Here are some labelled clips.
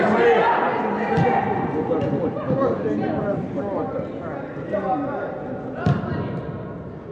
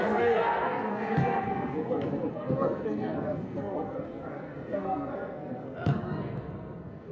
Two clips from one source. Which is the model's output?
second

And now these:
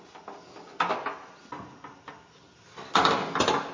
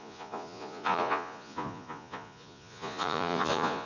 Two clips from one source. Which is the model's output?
second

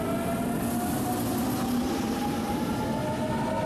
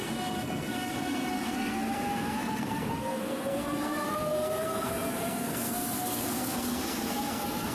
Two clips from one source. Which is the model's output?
second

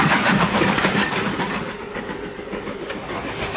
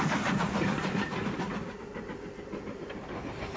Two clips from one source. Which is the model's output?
first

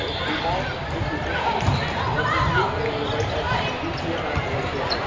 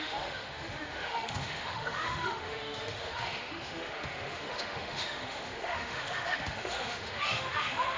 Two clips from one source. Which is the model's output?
second